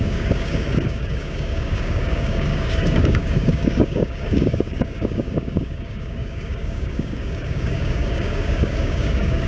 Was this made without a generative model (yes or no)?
no